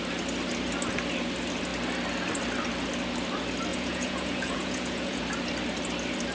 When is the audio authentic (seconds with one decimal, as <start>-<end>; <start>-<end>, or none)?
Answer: 0.0-3.7; 5.2-6.3

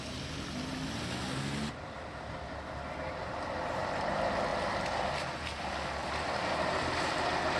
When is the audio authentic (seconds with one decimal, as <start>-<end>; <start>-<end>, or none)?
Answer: 0.0-6.0

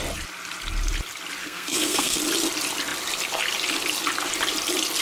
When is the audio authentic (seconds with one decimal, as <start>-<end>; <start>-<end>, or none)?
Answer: 0.0-1.4; 2.2-5.0

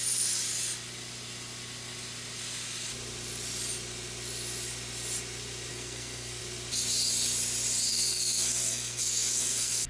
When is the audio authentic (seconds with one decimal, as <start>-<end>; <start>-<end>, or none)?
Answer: 0.0-5.7; 6.4-7.9